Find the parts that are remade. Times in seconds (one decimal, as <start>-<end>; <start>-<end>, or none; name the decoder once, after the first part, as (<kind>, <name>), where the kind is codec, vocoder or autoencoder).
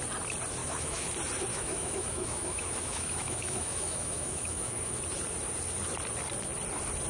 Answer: 0.6-1.1 (autoencoder, DAC-VAE); 1.5-5.0